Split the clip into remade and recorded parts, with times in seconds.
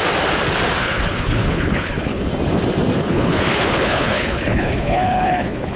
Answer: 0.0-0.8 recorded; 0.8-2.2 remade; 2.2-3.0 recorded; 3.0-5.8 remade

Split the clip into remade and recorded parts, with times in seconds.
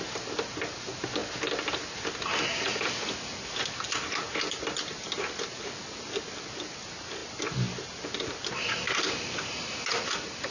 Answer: 0.0-10.5 recorded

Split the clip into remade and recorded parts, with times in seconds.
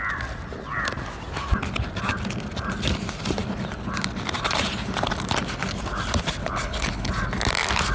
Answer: 0.0-6.4 recorded; 6.4-7.1 remade; 7.1-7.9 recorded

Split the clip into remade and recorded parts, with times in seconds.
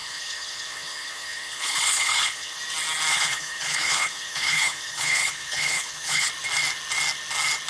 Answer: 0.0-2.6 remade; 2.6-3.1 recorded; 3.1-6.3 remade; 6.3-7.7 recorded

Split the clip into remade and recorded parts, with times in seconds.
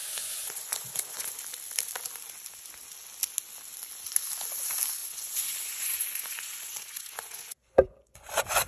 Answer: 0.0-1.3 remade; 1.3-5.0 recorded; 5.0-8.7 remade